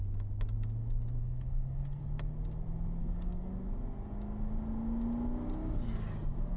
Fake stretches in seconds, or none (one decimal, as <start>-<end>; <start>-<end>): 1.2-2.0; 3.0-3.5